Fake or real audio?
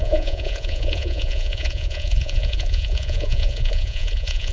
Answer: fake